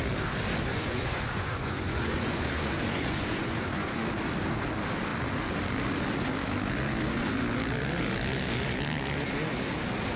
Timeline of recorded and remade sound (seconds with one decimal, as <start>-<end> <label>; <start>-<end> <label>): 0.0-0.7 recorded; 0.7-4.0 remade; 4.0-10.2 recorded